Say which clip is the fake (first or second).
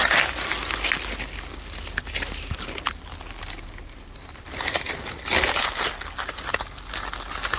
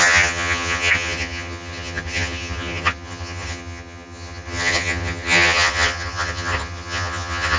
second